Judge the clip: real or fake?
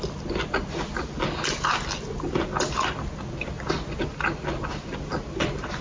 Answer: real